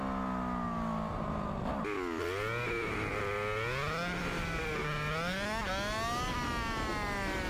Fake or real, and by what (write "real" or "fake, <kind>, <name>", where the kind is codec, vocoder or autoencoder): real